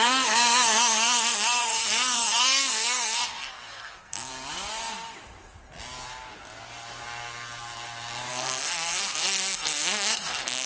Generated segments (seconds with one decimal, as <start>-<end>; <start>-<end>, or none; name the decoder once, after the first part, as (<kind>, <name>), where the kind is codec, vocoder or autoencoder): 0.0-4.3 (codec, SNAC); 8.3-10.7